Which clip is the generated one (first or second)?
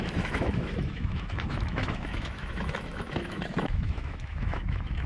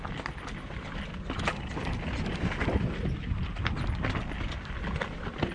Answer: first